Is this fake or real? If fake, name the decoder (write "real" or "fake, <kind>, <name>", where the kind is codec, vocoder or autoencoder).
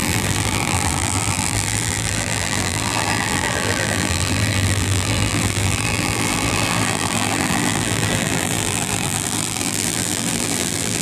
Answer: fake, vocoder, BigVGAN v2